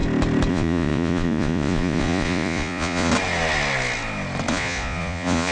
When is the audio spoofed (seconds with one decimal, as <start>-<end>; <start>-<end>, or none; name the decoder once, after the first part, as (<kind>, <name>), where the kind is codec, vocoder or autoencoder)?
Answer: 0.5-3.1 (vocoder, Vocos); 4.5-5.5